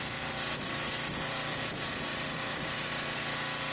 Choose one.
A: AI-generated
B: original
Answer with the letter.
B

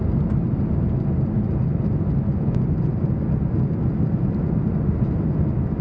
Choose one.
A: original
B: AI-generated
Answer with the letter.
A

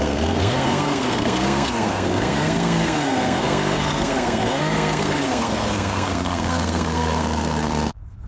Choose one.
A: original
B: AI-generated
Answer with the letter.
B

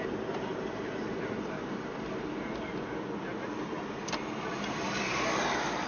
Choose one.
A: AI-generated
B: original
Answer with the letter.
B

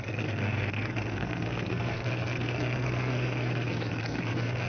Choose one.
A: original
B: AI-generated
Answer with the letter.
B